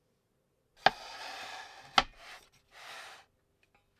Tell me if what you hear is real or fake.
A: real